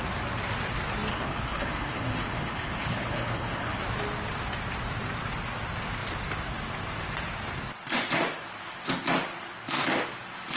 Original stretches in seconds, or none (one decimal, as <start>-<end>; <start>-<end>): 0.0-1.1; 3.8-10.6